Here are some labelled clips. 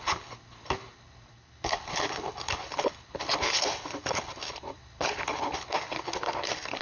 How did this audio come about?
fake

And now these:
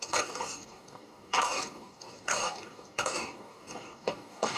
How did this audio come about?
fake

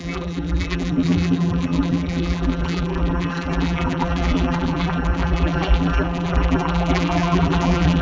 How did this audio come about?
fake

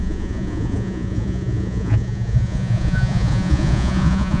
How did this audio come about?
fake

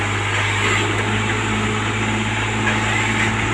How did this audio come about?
real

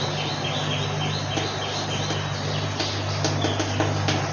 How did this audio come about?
real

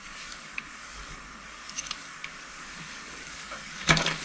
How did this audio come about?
fake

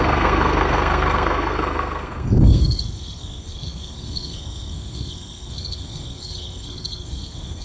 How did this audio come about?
fake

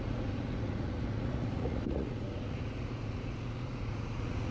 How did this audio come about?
fake